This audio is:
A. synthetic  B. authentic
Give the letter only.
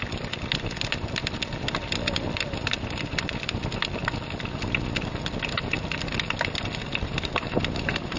B